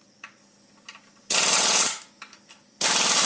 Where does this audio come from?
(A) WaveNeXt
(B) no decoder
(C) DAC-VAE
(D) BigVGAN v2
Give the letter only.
B